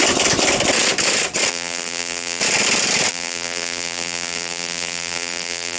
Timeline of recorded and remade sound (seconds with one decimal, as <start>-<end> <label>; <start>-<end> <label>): 0.0-1.5 recorded; 1.5-2.4 remade; 2.4-3.1 recorded; 3.1-5.8 remade